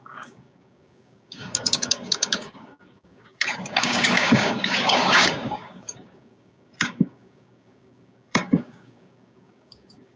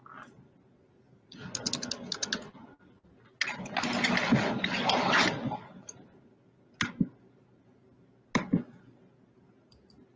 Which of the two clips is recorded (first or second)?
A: second